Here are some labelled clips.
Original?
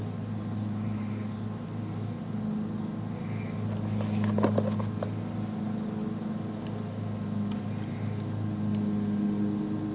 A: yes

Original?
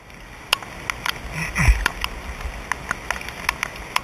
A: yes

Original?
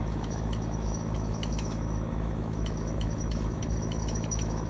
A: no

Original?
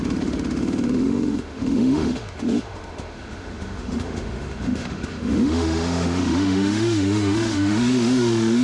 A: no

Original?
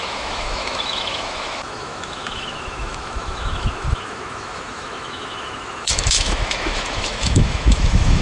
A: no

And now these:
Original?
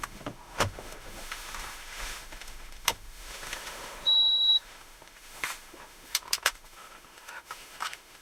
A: no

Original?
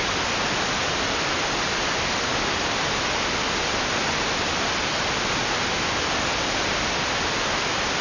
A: yes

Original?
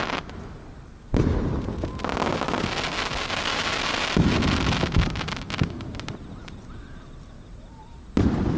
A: yes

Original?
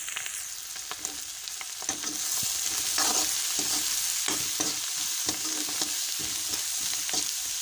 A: yes